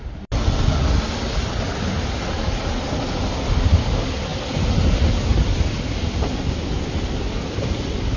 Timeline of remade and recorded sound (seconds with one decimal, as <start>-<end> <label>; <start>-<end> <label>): 0.0-8.2 recorded